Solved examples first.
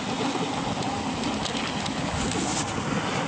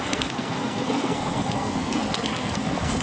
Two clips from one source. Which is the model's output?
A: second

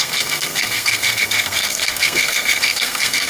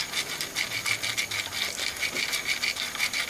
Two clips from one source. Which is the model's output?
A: first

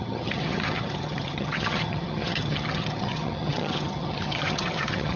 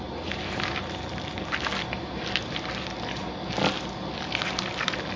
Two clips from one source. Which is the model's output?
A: first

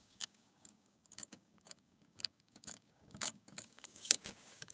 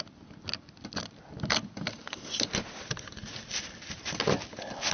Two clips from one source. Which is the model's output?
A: first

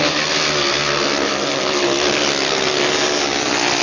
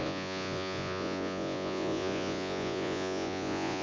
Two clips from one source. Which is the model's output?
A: second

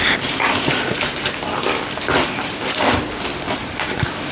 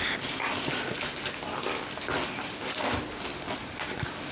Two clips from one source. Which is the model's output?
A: first